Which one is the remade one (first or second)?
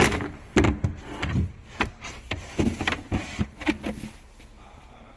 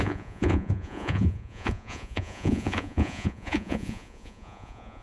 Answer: second